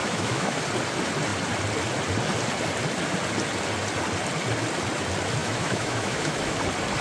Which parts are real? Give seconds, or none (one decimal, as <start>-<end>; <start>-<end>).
0.6-5.4; 6.6-7.0